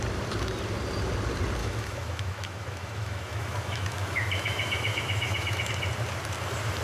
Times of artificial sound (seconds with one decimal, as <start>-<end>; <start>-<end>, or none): 1.6-5.7